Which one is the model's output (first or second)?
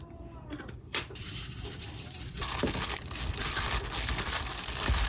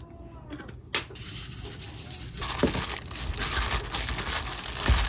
first